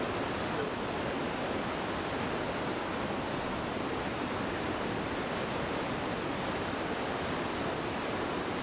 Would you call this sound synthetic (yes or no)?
no